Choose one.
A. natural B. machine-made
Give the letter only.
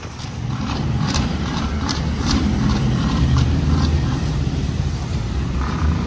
B